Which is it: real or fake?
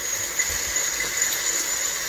real